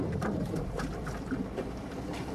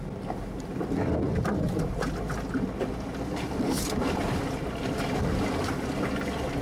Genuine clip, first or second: second